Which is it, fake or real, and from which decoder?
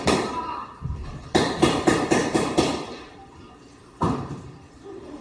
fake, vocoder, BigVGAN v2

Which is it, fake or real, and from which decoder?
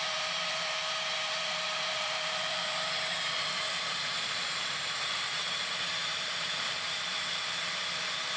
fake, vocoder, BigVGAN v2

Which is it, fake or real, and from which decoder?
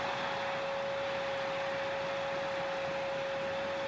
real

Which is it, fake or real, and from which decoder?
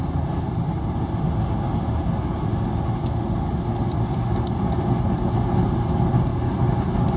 real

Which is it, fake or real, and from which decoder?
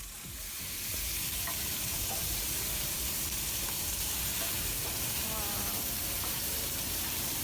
fake, vocoder, BigVGAN v2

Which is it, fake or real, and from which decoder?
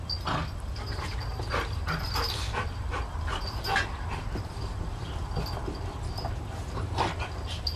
real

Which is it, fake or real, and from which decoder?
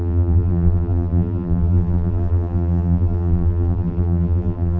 fake, vocoder, BigVGAN v2